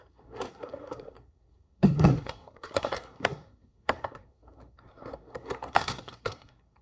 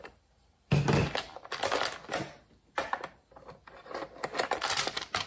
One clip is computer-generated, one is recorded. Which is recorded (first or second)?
second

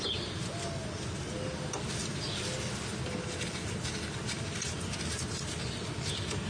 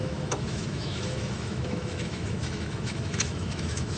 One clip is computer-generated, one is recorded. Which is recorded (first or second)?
first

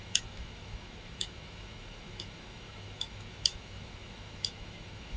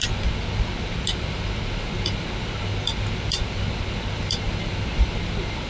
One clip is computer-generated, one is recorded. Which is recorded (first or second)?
second